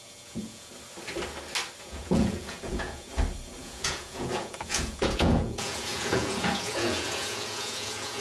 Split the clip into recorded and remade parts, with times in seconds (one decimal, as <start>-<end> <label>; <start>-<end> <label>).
0.0-0.7 remade; 0.7-1.8 recorded; 1.8-3.1 remade; 3.1-3.6 recorded; 3.6-8.2 remade